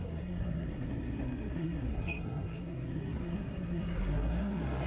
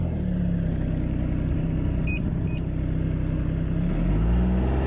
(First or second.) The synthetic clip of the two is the first